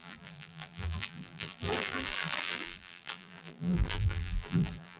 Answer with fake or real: fake